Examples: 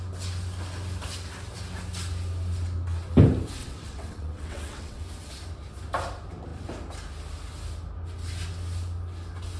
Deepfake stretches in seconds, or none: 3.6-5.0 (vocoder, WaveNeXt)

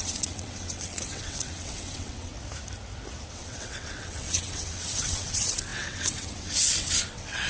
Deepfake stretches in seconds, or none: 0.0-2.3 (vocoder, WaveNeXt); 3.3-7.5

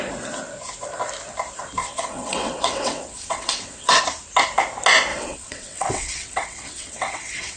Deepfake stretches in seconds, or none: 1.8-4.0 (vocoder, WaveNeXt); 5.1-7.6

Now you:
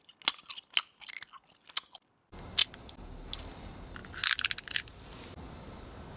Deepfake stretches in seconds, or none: none